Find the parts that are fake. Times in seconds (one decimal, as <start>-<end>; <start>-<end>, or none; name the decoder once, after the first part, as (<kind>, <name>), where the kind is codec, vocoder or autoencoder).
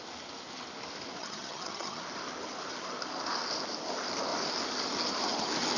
1.2-2.0 (vocoder, HiFi-GAN)